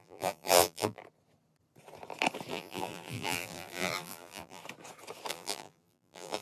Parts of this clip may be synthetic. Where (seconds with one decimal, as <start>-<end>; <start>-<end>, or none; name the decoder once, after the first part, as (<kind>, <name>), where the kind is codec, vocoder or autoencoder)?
0.0-1.0 (vocoder, BigVGAN v2); 2.5-4.6; 5.3-6.4